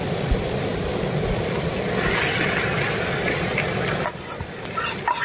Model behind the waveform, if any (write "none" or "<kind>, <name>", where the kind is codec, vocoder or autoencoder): vocoder, BigVGAN v2